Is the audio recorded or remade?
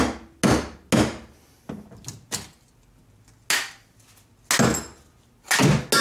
recorded